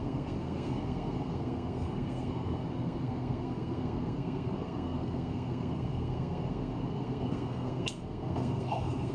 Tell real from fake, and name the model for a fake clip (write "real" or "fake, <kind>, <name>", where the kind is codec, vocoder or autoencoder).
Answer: fake, codec, SNAC